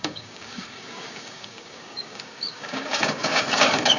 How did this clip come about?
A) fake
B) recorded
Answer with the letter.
A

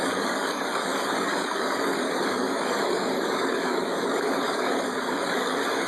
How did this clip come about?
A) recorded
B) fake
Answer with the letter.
B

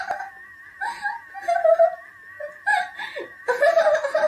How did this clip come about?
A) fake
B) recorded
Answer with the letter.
B